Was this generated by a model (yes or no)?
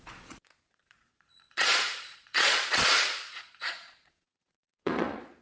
yes